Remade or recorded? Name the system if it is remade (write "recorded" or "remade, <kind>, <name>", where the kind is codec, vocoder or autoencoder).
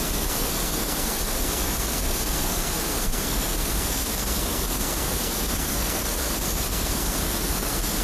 remade, codec, SNAC